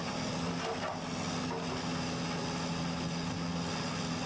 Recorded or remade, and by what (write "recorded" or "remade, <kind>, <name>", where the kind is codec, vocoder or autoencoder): recorded